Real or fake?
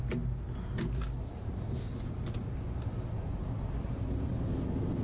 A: real